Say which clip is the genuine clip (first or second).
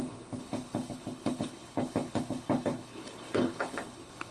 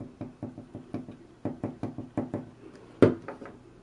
second